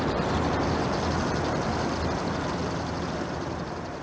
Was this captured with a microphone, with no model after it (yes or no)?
yes